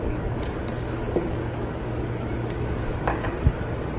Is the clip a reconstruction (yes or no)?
yes